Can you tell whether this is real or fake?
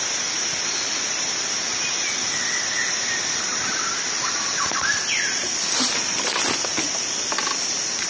real